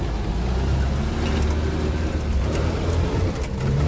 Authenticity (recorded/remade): recorded